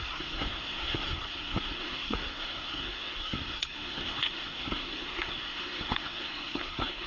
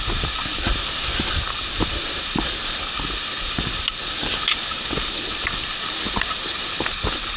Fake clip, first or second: first